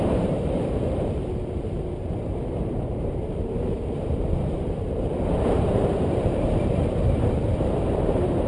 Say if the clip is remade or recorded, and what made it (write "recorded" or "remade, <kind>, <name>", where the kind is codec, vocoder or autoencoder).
remade, vocoder, BigVGAN v2